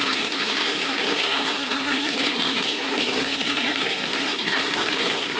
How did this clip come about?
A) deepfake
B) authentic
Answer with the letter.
A